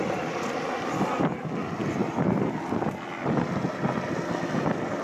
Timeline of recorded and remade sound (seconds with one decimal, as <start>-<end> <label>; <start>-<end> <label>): 0.0-5.0 recorded